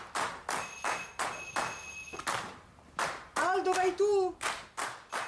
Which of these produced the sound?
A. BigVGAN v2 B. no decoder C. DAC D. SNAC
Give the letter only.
B